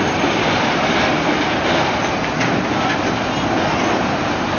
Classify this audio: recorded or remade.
recorded